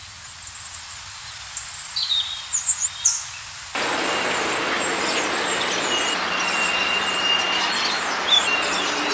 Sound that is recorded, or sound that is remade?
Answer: recorded